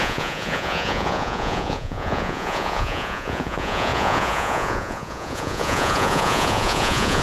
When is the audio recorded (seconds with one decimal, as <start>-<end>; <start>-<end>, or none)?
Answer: none